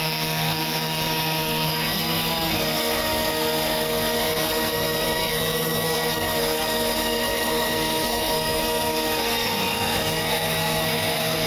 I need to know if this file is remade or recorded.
remade